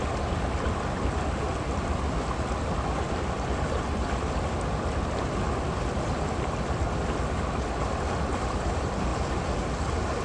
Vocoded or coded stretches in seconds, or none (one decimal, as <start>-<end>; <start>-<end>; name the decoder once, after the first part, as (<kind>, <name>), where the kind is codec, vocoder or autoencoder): none